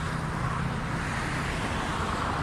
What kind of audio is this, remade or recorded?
recorded